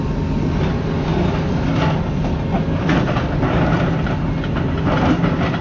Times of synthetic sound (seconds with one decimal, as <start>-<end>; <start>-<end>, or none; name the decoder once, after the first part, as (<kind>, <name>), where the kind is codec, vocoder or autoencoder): none